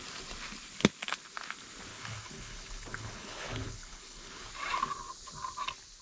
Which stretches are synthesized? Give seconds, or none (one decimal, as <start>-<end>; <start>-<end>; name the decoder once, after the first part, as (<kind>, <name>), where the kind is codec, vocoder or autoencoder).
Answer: 1.9-4.5 (codec, HILCodec)